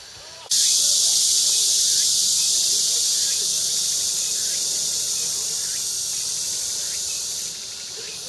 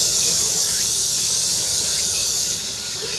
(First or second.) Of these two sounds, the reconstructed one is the second